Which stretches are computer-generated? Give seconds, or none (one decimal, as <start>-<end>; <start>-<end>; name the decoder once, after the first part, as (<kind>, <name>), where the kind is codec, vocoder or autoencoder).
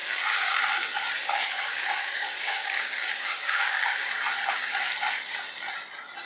0.0-0.6 (codec, DAC); 1.2-4.1